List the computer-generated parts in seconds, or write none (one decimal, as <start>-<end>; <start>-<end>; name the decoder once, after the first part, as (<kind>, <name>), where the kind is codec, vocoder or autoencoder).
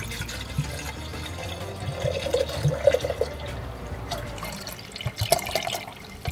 3.6-4.7 (vocoder, BigVGAN v2)